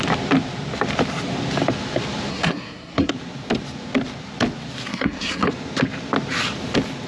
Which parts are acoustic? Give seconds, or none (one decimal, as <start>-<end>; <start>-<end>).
0.0-2.3; 3.1-4.9; 5.5-7.1